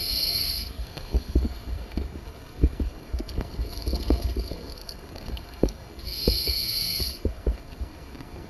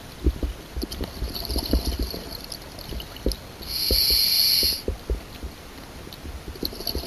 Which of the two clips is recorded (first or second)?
second